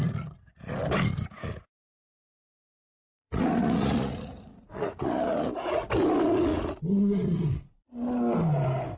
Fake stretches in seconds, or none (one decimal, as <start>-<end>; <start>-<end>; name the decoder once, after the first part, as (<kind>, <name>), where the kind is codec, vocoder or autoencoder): 3.0-5.9 (vocoder, Vocos); 6.5-7.6